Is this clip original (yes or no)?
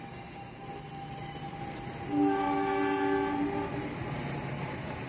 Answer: yes